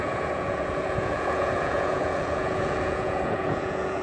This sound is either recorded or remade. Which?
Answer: remade